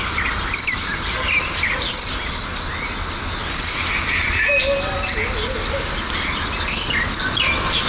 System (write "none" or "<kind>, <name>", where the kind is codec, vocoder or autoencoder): none